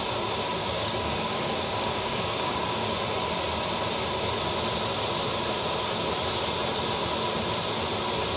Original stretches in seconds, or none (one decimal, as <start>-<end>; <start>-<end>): 0.0-0.6; 2.9-8.4